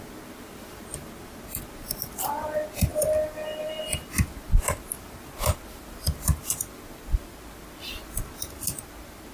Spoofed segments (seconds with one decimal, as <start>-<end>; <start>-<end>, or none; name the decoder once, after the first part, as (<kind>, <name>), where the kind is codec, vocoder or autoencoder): none